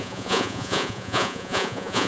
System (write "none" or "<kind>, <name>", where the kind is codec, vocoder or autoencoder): vocoder, Vocos